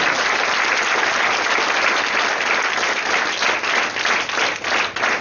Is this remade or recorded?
recorded